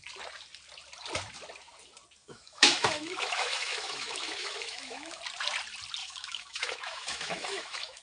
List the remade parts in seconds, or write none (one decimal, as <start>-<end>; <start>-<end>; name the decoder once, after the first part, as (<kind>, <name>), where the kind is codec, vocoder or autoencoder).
2.2-5.2 (autoencoder, DAC-VAE); 6.0-8.0